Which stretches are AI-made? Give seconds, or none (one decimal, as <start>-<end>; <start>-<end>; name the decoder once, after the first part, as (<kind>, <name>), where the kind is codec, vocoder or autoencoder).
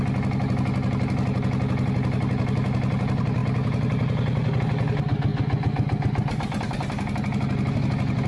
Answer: none